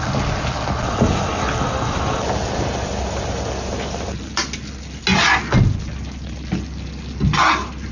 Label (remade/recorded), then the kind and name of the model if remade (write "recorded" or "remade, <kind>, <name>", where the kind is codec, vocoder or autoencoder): recorded